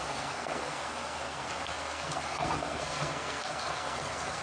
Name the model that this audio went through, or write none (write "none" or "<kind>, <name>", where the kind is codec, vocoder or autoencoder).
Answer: codec, SNAC